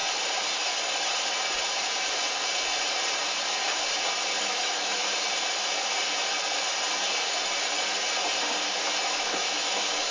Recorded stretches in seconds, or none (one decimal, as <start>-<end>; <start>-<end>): 0.0-4.4; 5.0-8.9

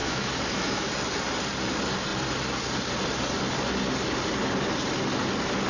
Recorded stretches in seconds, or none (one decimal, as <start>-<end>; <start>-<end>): 0.9-5.7

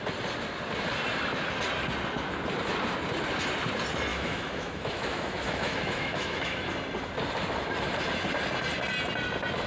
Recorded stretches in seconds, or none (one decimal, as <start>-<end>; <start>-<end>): 0.0-4.1; 6.7-9.7

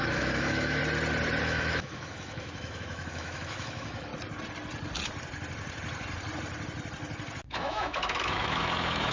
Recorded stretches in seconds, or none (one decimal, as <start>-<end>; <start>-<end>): 0.8-1.4; 4.1-7.5

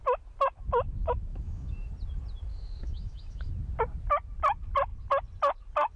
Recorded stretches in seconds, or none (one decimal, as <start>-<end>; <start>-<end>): 0.0-1.3; 1.9-2.5; 3.5-6.0

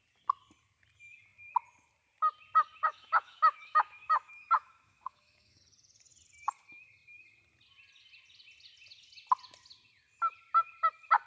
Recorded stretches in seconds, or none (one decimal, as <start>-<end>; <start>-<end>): 0.0-2.9; 5.6-11.3

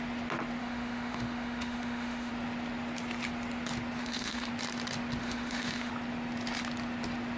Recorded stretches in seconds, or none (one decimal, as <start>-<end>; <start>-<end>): 0.0-0.6; 2.3-4.0; 4.5-5.2; 5.9-7.4

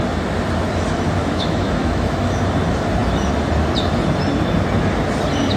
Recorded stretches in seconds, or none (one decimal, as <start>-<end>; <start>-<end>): 0.0-1.2; 2.4-5.6